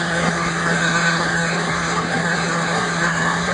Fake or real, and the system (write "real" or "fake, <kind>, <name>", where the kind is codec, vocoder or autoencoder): fake, codec, SNAC